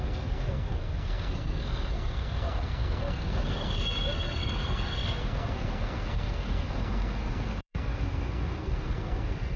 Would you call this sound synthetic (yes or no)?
yes